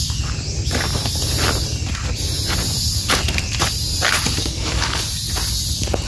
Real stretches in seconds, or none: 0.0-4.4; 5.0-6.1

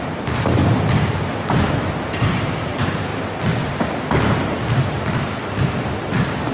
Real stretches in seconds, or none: 0.6-1.5; 3.1-5.6